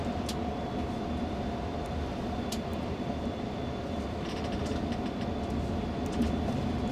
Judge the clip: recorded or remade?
recorded